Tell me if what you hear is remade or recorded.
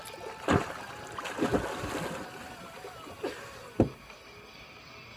recorded